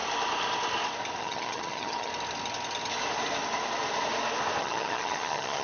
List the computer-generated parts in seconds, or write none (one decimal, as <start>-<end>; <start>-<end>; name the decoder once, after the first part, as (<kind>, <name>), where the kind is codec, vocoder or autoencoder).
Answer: 1.2-2.1 (vocoder, HiFi-GAN); 4.6-5.6